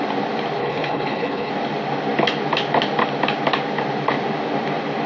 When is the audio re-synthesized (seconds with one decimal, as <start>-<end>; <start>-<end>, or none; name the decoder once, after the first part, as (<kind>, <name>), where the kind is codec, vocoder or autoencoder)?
0.6-1.5 (codec, HILCodec)